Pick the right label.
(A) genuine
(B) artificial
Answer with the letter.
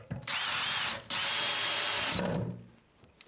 A